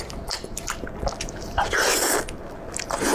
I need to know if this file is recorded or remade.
recorded